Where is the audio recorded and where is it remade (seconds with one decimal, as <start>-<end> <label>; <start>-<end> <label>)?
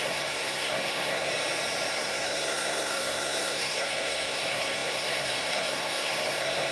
0.0-1.3 remade; 1.3-1.9 recorded; 1.9-6.7 remade